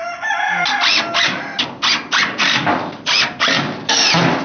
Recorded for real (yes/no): yes